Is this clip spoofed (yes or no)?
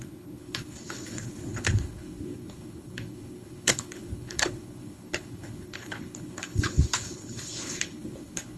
yes